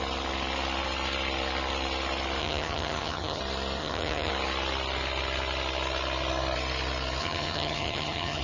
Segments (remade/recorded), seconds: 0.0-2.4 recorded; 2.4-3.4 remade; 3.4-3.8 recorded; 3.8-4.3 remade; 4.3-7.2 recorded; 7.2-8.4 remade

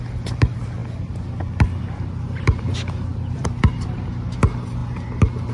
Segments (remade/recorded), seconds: 0.0-3.1 recorded; 3.1-4.0 remade; 4.0-5.5 recorded